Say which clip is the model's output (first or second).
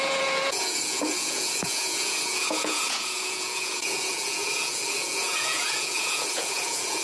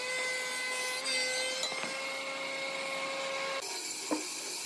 first